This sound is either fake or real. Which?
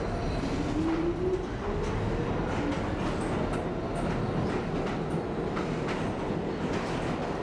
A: real